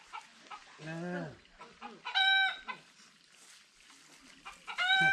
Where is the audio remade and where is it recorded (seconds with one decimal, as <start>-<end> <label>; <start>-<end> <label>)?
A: 0.0-5.1 recorded